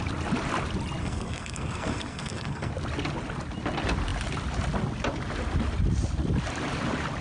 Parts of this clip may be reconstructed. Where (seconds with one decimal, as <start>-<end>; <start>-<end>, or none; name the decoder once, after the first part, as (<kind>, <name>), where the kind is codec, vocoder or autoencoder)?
1.0-2.7 (codec, SNAC)